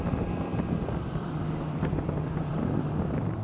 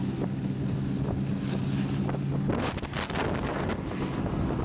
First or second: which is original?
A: second